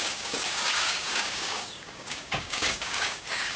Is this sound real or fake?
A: fake